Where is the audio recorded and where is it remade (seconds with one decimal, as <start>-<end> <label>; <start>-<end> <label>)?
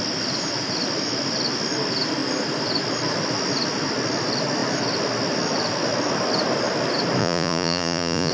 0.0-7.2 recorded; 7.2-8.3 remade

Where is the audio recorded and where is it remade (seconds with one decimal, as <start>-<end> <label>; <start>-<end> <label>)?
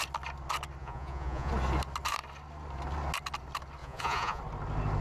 0.0-0.8 recorded; 0.8-1.5 remade; 1.5-3.8 recorded; 3.8-4.4 remade; 4.4-5.0 recorded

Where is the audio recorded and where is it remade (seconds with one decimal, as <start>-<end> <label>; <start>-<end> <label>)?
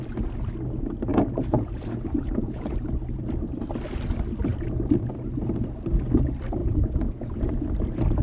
0.0-1.1 recorded; 1.1-2.8 remade; 2.8-6.6 recorded; 6.6-7.5 remade; 7.5-8.2 recorded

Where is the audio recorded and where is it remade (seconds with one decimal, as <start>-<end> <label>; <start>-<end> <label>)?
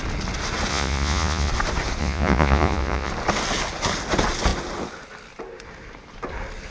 0.0-0.7 recorded; 0.7-1.5 remade; 1.5-2.0 recorded; 2.0-3.1 remade; 3.1-6.7 recorded